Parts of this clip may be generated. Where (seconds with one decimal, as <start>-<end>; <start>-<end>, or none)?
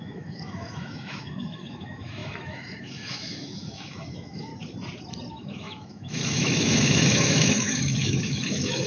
0.0-4.5; 5.3-8.9